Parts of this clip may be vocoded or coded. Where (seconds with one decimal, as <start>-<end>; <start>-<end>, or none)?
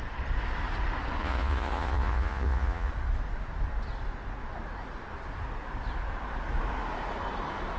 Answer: 1.2-2.9